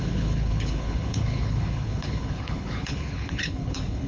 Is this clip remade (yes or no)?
yes